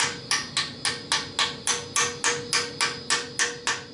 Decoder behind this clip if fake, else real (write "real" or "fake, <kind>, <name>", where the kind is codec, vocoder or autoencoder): real